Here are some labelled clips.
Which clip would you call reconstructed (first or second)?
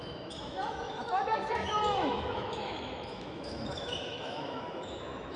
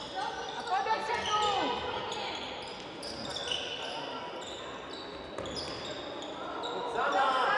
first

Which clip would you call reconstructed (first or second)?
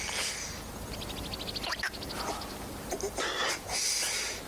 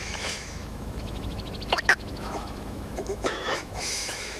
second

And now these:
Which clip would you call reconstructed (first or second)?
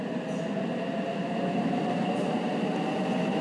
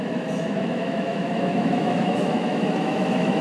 second